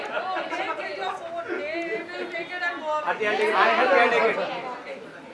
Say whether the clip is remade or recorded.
recorded